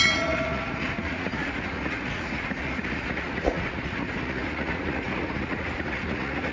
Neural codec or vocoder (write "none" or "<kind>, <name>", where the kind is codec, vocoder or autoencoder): vocoder, Vocos